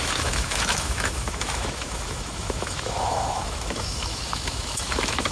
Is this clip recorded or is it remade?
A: remade